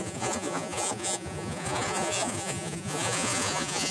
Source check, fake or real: fake